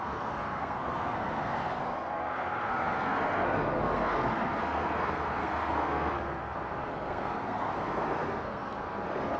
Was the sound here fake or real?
fake